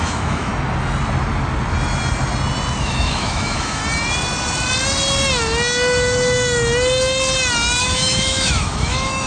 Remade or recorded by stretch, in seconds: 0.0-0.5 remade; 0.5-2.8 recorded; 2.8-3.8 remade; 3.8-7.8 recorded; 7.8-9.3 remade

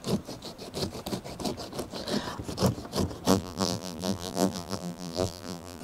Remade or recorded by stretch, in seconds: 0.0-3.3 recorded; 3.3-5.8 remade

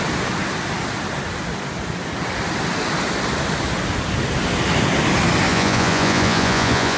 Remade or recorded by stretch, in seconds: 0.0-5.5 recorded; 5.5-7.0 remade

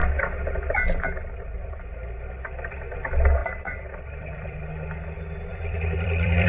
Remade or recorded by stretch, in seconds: 0.0-3.4 recorded; 3.4-4.7 remade; 4.7-5.5 recorded; 5.5-6.5 remade

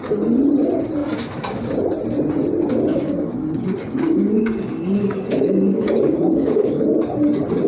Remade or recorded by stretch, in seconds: 0.0-2.9 recorded; 2.9-6.8 remade; 6.8-7.7 recorded

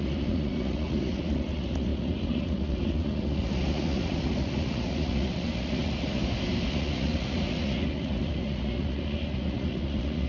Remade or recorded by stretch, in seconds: 0.0-6.2 remade; 6.2-6.7 recorded; 6.7-10.3 remade

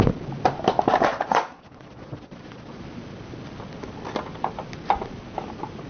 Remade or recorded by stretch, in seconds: 0.0-1.1 recorded; 1.1-2.8 remade; 2.8-5.9 recorded

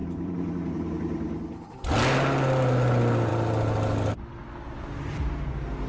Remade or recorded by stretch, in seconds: 0.0-1.8 remade; 1.8-5.9 recorded